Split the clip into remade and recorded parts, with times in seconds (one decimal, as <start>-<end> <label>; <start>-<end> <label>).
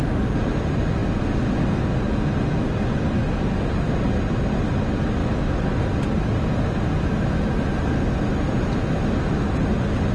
0.0-5.2 recorded; 5.2-5.8 remade; 5.8-10.1 recorded